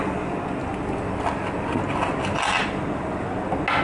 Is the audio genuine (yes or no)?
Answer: yes